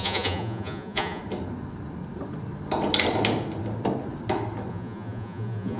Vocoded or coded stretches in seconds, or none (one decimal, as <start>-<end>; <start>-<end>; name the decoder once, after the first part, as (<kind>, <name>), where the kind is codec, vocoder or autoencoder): 0.0-1.2 (vocoder, Vocos); 4.7-5.8